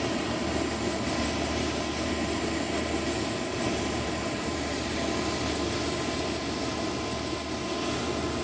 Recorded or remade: recorded